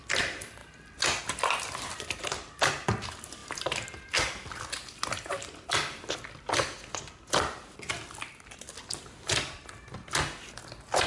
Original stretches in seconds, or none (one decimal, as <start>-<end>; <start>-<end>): 0.0-11.1